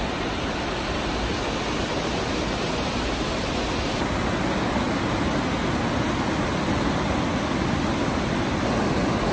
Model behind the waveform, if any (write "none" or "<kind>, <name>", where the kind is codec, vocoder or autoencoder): none